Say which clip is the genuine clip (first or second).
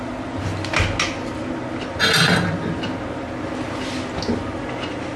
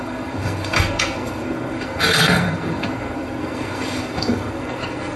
first